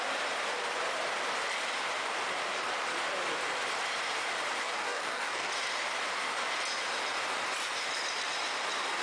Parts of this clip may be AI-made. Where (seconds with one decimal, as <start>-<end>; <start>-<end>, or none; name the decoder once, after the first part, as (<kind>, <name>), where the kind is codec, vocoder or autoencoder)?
4.6-5.5 (codec, DAC)